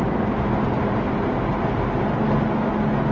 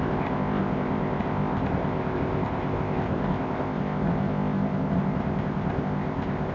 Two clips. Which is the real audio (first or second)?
first